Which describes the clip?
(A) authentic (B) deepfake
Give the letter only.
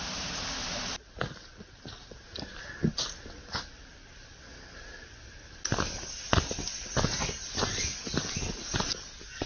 A